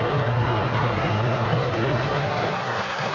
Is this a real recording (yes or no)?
no